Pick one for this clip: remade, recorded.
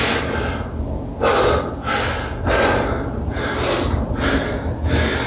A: recorded